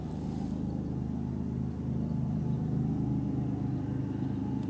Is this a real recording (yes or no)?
yes